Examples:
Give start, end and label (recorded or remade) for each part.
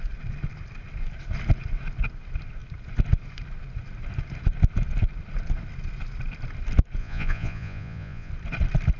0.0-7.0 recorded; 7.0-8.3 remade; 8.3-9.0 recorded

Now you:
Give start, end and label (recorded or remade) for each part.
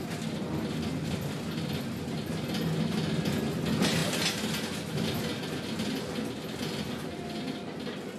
0.0-8.2 recorded